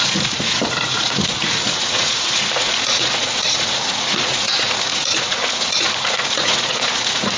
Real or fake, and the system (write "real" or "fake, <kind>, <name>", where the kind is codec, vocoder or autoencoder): fake, vocoder, Vocos